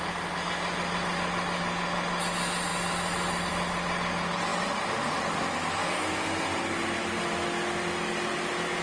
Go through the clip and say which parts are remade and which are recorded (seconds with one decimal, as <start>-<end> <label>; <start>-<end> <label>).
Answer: 0.0-8.8 recorded